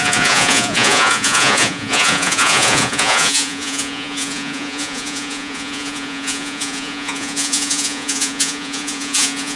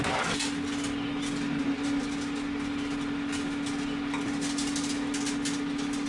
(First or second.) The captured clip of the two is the second